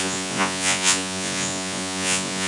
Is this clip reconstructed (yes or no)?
yes